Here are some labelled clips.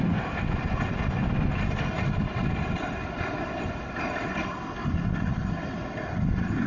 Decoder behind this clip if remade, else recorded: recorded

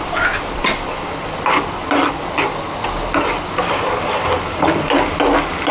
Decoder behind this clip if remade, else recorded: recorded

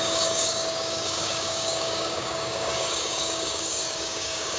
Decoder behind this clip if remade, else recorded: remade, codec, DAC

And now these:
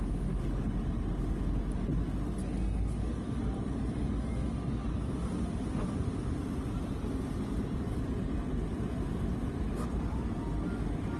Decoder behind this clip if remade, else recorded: recorded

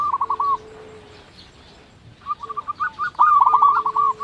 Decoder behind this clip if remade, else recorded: recorded